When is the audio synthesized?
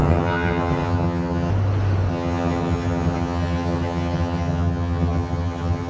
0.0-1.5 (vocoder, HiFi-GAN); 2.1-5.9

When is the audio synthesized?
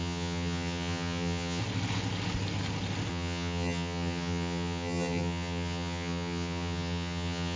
0.0-1.6 (vocoder, HiFi-GAN); 3.1-7.6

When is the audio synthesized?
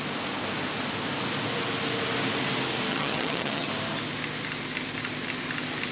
2.9-3.7 (vocoder, HiFi-GAN)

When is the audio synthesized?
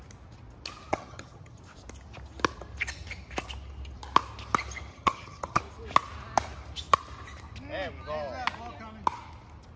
0.9-1.6 (vocoder, HiFi-GAN); 4.9-5.6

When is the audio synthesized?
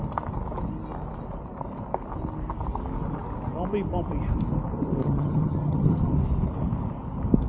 5.0-6.1 (vocoder, HiFi-GAN)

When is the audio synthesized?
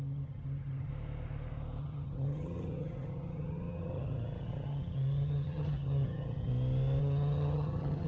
0.0-0.9 (vocoder, HiFi-GAN); 1.8-6.5; 7.0-8.1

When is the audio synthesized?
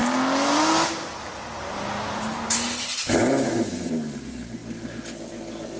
none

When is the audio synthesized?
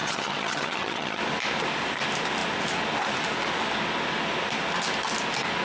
0.0-1.2 (vocoder, HiFi-GAN)